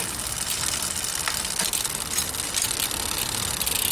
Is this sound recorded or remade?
recorded